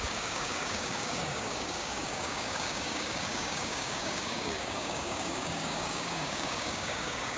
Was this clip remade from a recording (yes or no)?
yes